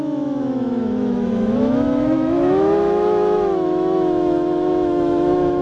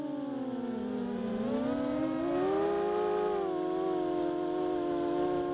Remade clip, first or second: first